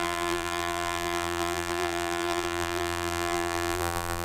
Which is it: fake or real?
fake